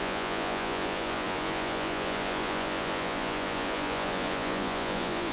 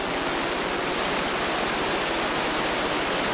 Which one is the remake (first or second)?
first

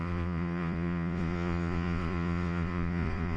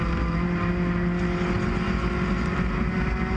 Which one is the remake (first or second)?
first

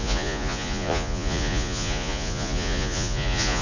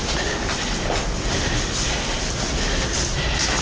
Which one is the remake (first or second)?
first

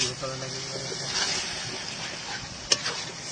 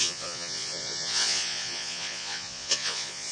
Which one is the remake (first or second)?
second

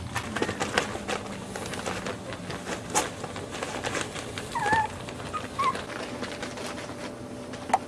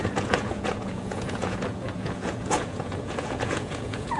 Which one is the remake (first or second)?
second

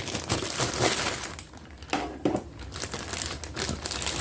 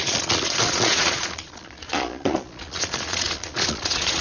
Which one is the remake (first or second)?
second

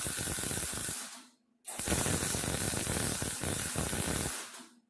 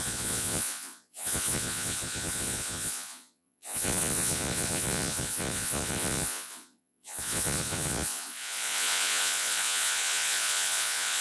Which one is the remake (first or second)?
second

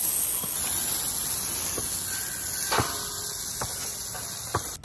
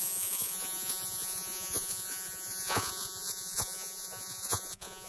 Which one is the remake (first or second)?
second